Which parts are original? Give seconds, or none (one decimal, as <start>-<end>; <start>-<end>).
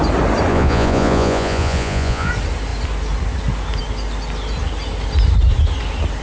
0.0-0.5; 2.3-6.2